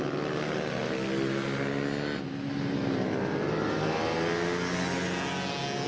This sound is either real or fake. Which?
real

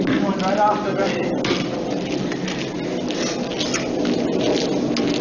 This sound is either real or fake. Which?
real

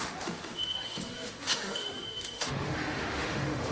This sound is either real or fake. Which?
fake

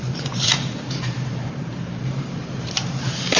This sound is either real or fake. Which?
fake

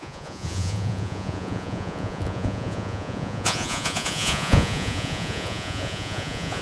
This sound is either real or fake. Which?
fake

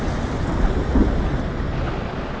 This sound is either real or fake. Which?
real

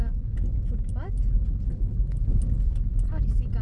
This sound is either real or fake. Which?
real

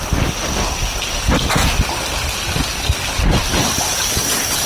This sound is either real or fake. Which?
real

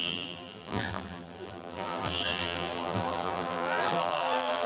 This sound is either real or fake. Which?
fake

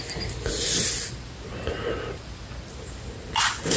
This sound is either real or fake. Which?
real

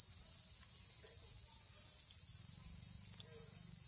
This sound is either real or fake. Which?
real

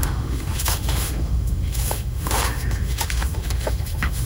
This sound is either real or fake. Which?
fake